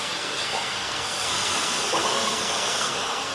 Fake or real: fake